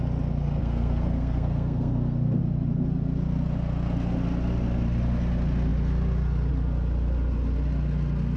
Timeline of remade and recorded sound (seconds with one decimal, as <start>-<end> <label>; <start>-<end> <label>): 0.0-0.6 recorded; 0.6-2.4 remade; 2.4-8.4 recorded